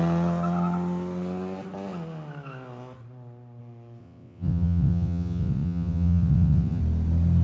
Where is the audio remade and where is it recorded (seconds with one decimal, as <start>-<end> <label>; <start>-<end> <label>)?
0.0-4.0 recorded; 4.0-6.8 remade; 6.8-7.4 recorded